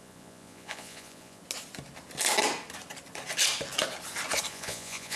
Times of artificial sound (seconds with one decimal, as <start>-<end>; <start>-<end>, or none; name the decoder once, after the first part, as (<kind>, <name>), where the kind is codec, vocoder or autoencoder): 0.0-1.4 (vocoder, Vocos); 4.5-5.2